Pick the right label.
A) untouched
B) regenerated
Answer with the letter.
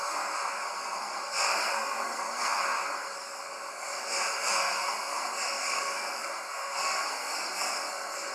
B